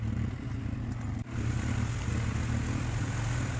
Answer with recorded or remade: recorded